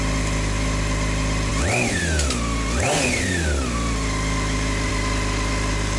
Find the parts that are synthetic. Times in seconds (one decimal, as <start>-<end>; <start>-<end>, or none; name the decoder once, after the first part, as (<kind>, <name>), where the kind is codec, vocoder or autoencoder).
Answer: none